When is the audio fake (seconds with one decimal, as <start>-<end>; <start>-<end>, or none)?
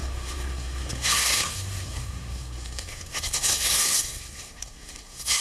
0.0-5.4